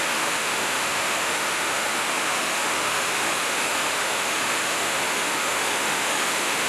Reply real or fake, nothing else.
fake